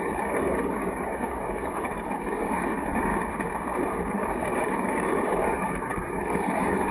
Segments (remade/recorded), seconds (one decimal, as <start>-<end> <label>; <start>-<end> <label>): 0.0-3.1 remade; 3.1-4.1 recorded; 4.1-6.9 remade